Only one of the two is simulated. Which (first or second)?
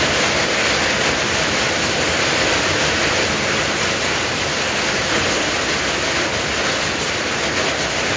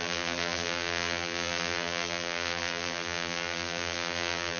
second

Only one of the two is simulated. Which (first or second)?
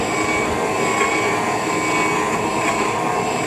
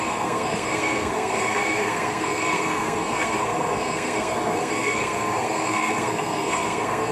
second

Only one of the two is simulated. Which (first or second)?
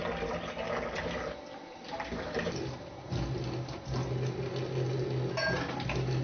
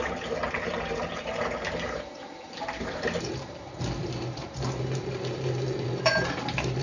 second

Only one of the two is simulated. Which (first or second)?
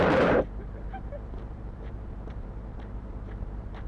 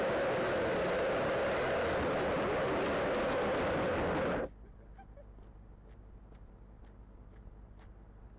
first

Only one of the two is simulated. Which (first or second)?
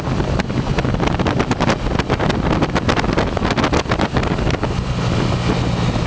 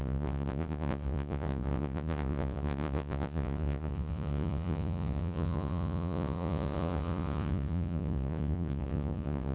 second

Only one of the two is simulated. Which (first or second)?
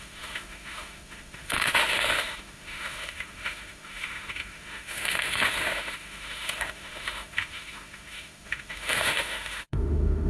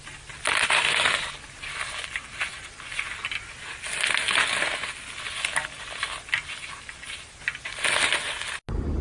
first